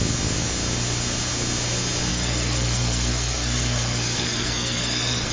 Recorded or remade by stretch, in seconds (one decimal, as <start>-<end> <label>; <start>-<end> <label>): 0.0-2.1 recorded; 2.1-5.3 remade